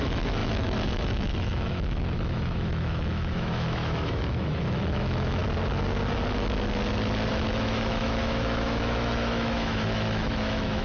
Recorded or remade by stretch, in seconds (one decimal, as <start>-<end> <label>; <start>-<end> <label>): 0.0-5.4 remade; 5.4-7.3 recorded; 7.3-10.8 remade